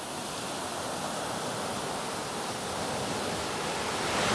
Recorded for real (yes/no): yes